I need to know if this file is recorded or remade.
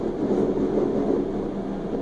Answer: recorded